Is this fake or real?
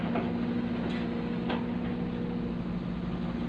real